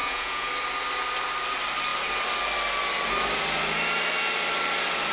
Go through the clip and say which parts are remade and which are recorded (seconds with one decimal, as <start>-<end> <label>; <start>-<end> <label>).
0.0-0.5 remade; 0.5-5.1 recorded